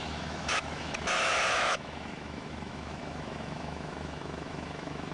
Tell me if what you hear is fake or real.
fake